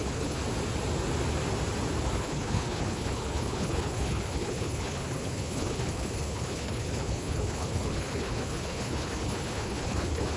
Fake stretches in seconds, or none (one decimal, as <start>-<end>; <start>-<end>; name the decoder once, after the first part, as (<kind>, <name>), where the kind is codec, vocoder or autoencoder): 0.0-0.4 (codec, HILCodec); 2.2-10.4